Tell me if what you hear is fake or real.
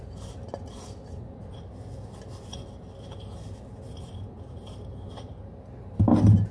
real